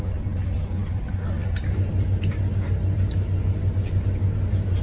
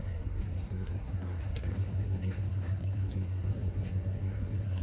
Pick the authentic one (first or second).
first